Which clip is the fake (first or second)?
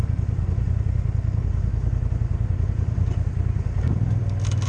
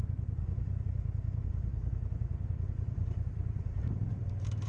second